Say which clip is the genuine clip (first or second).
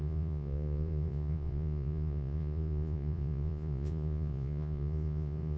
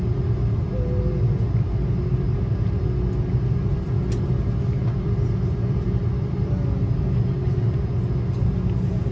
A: second